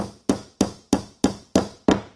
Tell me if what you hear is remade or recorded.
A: recorded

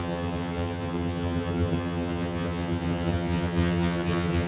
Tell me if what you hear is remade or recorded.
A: remade